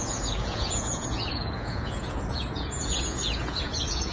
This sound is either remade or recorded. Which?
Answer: remade